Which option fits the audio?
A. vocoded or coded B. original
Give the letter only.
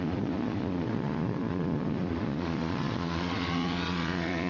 A